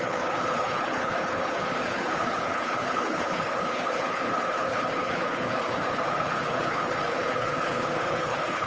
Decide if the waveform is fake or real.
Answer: fake